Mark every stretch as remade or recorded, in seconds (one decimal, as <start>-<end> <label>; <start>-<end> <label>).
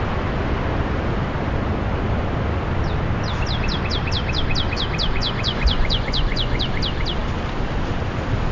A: 0.0-5.2 recorded; 5.2-6.6 remade; 6.6-8.5 recorded